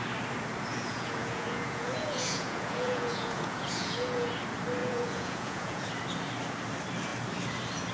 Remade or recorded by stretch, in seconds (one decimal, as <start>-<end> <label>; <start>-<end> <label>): 0.0-0.7 recorded; 0.7-4.3 remade; 4.3-4.8 recorded; 4.8-5.9 remade; 5.9-7.9 recorded

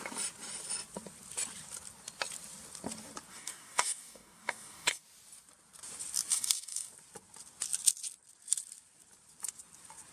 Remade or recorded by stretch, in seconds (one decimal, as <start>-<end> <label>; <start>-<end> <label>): 0.0-3.3 recorded; 3.3-5.0 remade; 5.0-6.3 recorded; 6.3-6.9 remade; 6.9-10.1 recorded

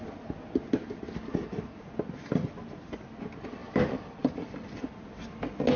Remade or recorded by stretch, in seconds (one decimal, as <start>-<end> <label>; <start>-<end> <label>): 0.0-3.6 recorded; 3.6-4.9 remade; 4.9-5.8 recorded

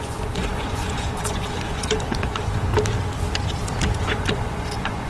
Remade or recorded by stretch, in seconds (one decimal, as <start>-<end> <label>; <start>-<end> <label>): 0.0-2.7 remade; 2.7-4.0 recorded; 4.0-5.1 remade